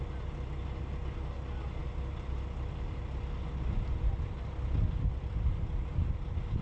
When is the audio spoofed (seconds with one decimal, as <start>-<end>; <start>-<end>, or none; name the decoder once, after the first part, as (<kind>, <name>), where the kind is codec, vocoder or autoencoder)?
none